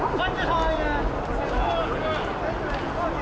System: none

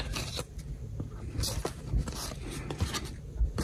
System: none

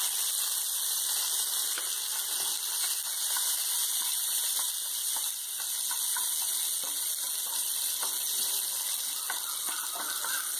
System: none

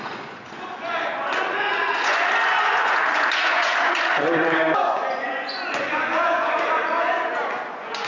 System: vocoder, Vocos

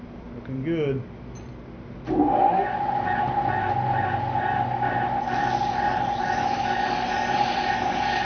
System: none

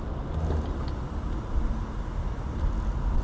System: none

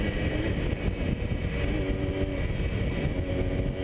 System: none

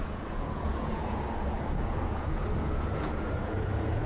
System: vocoder, Vocos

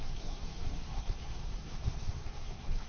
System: codec, SNAC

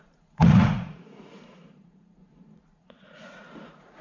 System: vocoder, Vocos